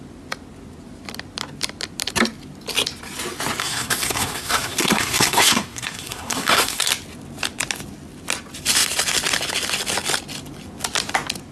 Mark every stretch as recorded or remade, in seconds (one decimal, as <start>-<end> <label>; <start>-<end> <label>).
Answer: 0.0-3.6 recorded; 3.6-6.9 remade; 6.9-11.5 recorded